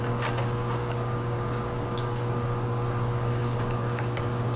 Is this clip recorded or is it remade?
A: remade